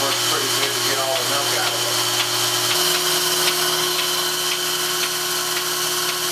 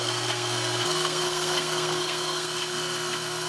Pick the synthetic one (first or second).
second